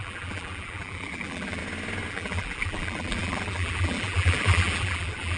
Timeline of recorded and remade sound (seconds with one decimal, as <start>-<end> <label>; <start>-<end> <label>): 0.0-1.6 remade; 1.6-2.1 recorded; 2.1-5.4 remade